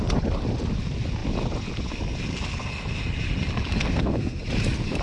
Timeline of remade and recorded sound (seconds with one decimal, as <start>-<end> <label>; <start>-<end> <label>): 0.0-3.8 recorded; 3.8-4.4 remade; 4.4-5.0 recorded